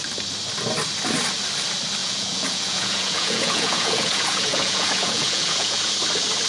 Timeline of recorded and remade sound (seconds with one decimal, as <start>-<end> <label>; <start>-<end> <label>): 0.0-2.0 recorded; 2.0-5.9 remade; 5.9-6.5 recorded